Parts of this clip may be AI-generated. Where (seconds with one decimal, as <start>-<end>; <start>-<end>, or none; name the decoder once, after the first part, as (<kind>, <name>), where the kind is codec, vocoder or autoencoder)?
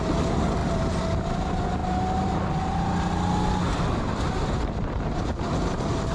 none